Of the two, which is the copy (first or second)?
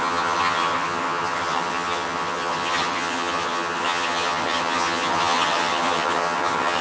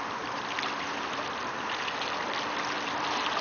first